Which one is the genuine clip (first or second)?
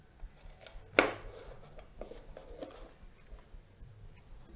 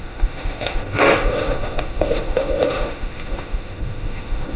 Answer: first